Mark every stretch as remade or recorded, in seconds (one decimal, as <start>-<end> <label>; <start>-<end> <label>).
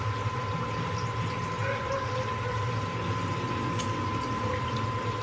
0.0-5.2 recorded